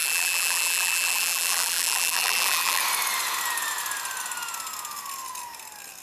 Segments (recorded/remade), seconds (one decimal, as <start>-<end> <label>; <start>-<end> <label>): 0.0-2.8 remade; 2.8-6.0 recorded